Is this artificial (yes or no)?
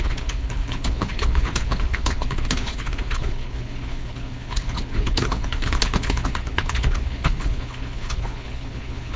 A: yes